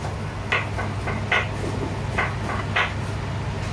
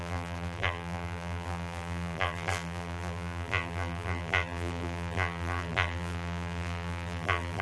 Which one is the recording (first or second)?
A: first